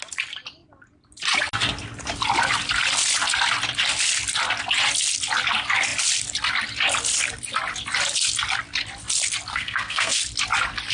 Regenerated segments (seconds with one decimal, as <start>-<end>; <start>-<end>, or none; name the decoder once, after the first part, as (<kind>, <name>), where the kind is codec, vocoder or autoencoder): 9.5-10.2 (codec, SNAC)